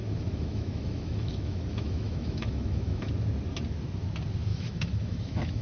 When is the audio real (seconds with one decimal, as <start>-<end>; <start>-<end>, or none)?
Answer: 3.1-4.5